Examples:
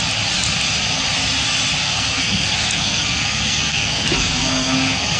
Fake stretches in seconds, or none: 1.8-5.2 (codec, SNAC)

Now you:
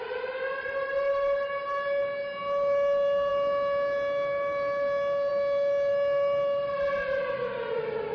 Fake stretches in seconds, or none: none

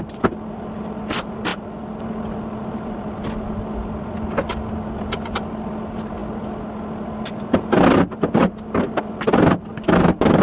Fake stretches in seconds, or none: none

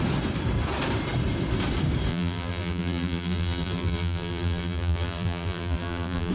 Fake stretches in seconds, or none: 2.1-6.3 (vocoder, BigVGAN v2)